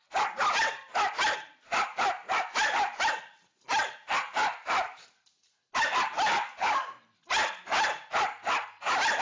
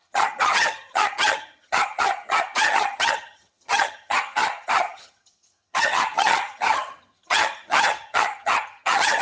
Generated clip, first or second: second